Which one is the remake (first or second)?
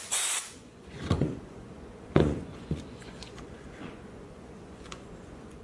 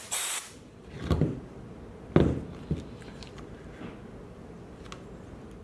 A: first